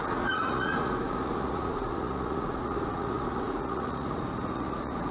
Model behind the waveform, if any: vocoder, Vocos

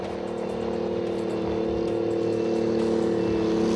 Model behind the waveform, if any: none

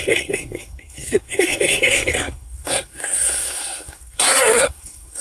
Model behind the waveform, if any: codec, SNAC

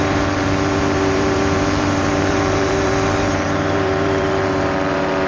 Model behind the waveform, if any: vocoder, BigVGAN v2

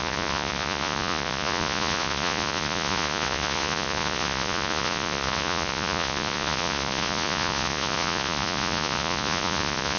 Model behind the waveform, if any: vocoder, Vocos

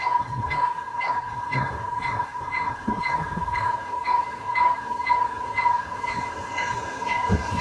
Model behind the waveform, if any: codec, SNAC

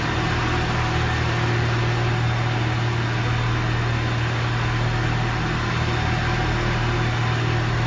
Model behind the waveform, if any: none